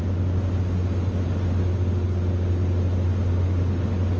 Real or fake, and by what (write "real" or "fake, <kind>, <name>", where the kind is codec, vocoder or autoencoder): real